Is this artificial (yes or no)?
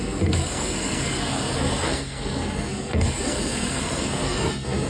yes